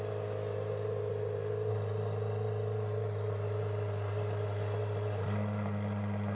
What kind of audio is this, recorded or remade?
recorded